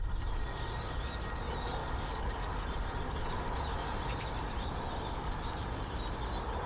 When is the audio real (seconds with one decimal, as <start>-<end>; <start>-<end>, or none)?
0.0-1.8; 2.5-6.7